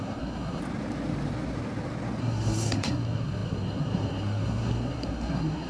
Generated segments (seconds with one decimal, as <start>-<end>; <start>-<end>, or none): 0.0-0.6; 2.2-5.7